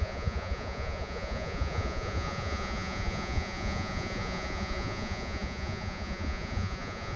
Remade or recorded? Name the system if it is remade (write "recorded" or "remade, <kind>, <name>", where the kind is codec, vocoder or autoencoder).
remade, vocoder, Vocos